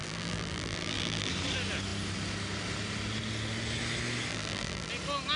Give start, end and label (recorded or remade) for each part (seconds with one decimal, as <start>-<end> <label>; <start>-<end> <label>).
0.0-1.3 remade; 1.3-4.3 recorded; 4.3-4.9 remade; 4.9-5.4 recorded